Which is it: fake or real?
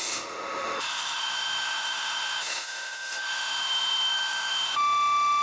fake